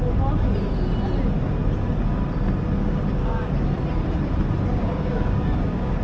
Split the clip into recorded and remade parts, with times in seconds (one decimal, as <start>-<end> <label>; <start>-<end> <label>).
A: 0.0-2.8 recorded; 2.8-3.5 remade; 3.5-4.7 recorded; 4.7-6.0 remade